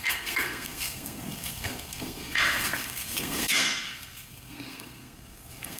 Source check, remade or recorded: remade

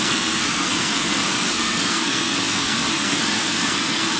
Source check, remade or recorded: remade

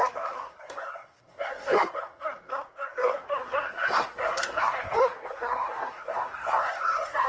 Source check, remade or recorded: remade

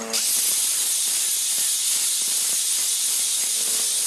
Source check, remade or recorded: recorded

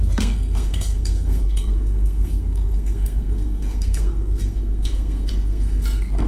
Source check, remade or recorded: remade